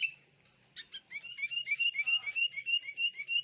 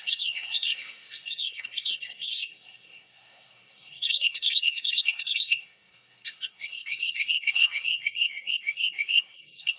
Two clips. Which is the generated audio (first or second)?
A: second